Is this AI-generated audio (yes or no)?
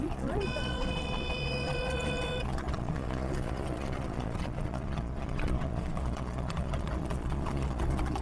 yes